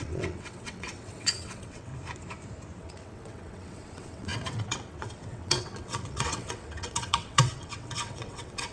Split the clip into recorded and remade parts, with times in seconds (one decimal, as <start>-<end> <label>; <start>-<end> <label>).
0.0-1.9 remade; 1.9-2.8 recorded; 2.8-8.7 remade